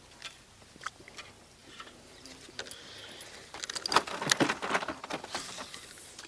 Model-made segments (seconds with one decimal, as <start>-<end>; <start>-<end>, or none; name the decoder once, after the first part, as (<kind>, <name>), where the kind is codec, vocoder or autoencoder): none